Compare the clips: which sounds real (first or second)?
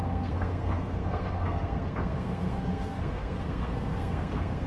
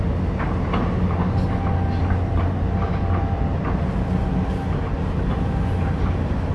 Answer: second